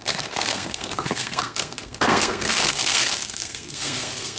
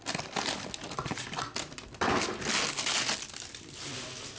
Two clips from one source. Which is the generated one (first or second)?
first